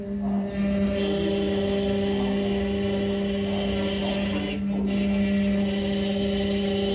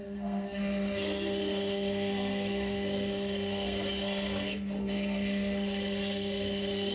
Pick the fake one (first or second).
second